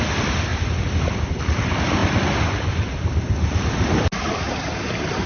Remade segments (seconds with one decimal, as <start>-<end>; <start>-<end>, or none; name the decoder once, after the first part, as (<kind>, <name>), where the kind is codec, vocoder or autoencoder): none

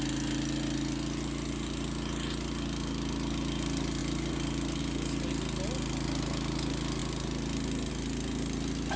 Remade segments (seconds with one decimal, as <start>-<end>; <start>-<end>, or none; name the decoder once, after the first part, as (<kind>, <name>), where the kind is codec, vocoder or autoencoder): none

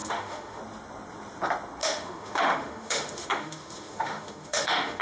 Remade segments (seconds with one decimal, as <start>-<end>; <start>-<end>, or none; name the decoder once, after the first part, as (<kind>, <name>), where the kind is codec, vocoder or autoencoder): 0.0-0.6 (autoencoder, DAC-VAE); 1.8-5.0

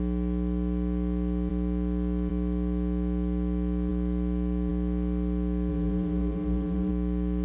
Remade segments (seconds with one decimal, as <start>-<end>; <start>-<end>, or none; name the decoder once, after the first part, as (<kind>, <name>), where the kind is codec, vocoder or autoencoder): 5.7-6.9 (vocoder, BigVGAN v2)

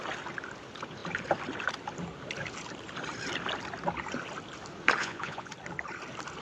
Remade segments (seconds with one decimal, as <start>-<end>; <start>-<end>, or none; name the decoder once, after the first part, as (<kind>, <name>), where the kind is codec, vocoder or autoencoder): 5.0-5.5 (vocoder, Vocos)